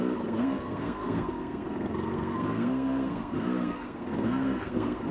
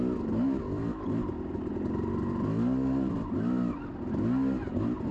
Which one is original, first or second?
second